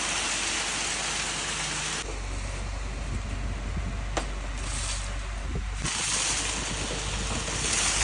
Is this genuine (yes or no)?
yes